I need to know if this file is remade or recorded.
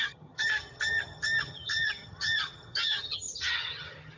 remade